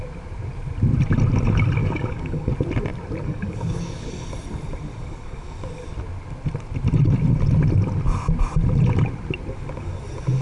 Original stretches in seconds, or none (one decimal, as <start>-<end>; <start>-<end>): 0.0-1.8; 2.5-3.2; 4.1-5.0; 5.7-10.4